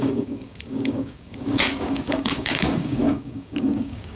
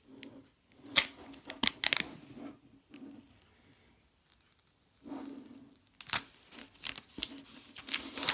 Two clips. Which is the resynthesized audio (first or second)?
first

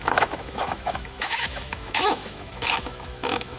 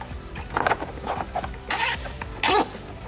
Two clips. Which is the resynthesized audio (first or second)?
first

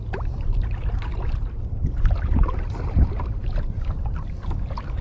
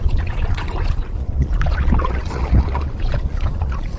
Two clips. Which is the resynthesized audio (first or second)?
second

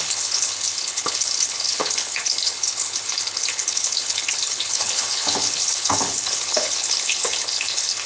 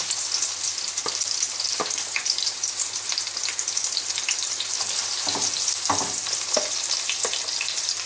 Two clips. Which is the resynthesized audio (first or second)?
first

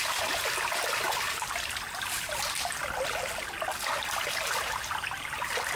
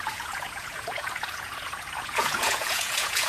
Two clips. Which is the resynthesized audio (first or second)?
second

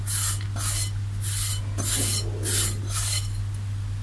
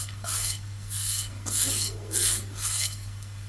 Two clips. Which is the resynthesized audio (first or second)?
second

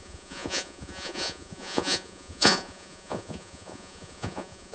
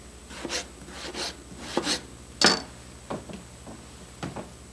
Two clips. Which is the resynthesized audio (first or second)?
first